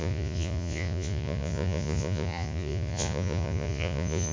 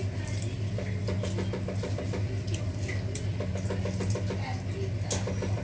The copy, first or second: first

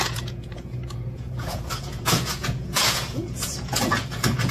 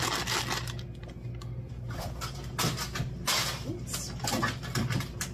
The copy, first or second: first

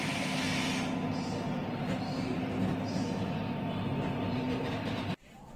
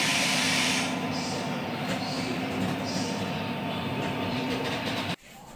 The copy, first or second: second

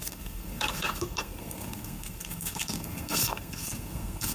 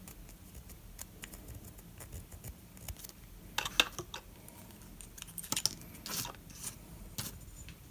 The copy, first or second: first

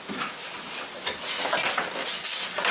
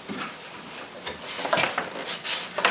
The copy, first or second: second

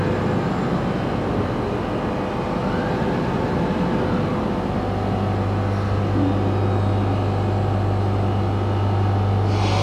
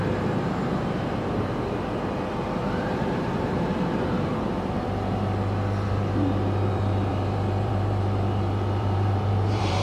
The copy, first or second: second